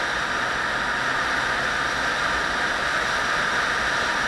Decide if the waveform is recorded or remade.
recorded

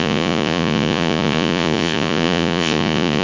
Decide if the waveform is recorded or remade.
remade